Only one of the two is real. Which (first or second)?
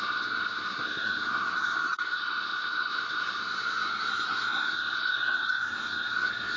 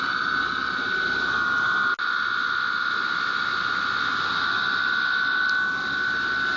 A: second